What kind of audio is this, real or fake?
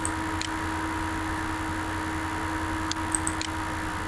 real